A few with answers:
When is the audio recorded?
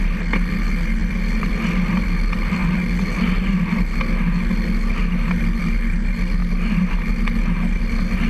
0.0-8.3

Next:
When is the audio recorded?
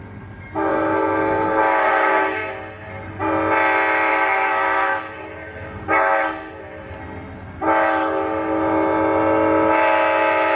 0.0-0.7; 2.5-4.1; 6.6-10.6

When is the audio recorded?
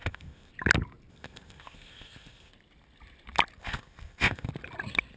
0.5-1.1; 2.5-3.6; 4.5-5.2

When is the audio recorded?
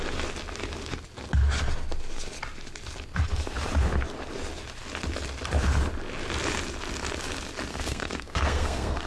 0.0-7.7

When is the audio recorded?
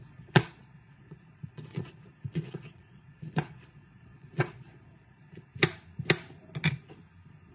5.5-7.5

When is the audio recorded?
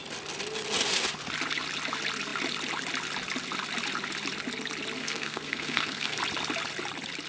0.0-5.0; 6.2-7.3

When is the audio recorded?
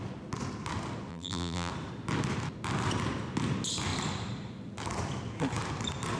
0.0-1.1; 1.7-6.2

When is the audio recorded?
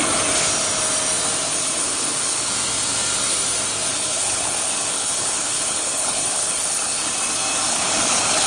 0.0-1.5; 2.5-3.9; 7.1-7.7